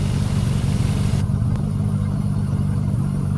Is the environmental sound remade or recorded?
recorded